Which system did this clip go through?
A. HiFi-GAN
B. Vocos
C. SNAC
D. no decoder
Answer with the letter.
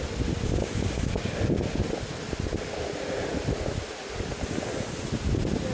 D